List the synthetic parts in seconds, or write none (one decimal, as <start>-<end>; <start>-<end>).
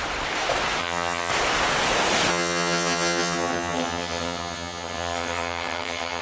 0.8-1.3; 2.3-6.2